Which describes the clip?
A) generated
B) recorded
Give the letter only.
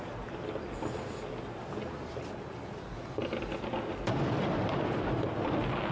B